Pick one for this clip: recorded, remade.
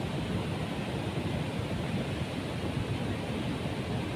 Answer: recorded